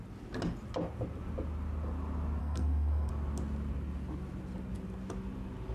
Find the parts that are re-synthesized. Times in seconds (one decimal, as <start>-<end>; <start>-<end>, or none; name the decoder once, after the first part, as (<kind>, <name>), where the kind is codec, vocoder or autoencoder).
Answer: 2.4-3.1 (codec, SNAC)